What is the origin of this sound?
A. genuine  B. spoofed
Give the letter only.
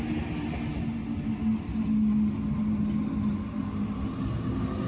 A